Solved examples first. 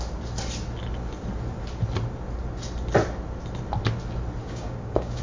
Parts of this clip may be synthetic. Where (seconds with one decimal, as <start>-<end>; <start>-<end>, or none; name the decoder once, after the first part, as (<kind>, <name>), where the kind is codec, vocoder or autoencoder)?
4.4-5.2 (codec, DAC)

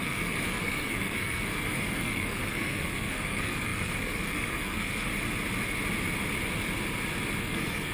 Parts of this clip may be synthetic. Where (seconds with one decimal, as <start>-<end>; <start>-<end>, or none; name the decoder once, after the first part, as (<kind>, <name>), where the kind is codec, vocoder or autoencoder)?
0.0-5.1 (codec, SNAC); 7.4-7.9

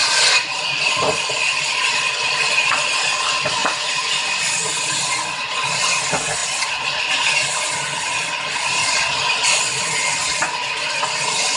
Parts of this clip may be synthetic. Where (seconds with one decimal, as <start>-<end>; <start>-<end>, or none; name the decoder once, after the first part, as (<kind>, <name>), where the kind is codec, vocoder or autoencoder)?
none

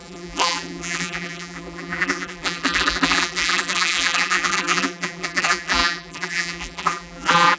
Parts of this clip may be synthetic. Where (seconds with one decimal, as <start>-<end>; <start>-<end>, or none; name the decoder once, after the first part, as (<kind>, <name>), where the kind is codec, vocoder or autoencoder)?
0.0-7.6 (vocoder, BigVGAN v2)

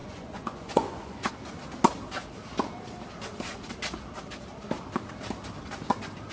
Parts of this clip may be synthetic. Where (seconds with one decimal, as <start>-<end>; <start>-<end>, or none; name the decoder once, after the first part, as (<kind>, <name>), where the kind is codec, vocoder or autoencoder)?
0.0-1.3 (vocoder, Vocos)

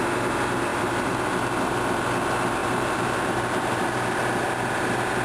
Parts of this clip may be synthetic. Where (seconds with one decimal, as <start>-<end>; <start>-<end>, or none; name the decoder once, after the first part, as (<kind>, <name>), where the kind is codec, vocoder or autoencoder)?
0.7-1.3 (vocoder, BigVGAN v2); 2.6-3.8

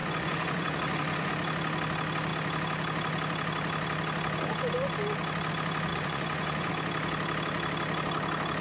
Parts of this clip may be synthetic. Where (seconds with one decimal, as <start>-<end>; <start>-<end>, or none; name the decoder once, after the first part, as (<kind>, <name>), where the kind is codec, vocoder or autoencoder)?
0.0-1.3 (vocoder, Vocos); 5.9-6.7